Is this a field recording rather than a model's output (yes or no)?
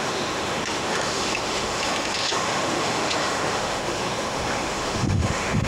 no